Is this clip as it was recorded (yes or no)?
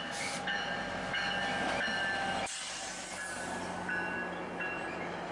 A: yes